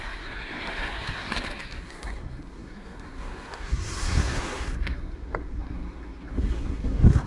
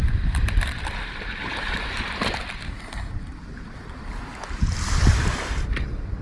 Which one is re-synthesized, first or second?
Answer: first